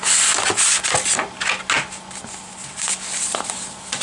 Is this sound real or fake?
real